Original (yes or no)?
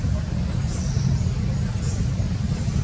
yes